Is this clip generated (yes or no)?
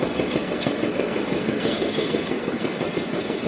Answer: yes